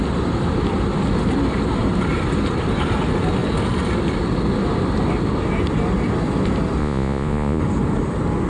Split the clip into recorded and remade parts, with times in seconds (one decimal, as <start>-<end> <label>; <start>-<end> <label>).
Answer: 0.0-6.8 recorded; 6.8-7.6 remade; 7.6-8.5 recorded